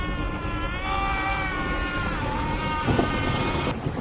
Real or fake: real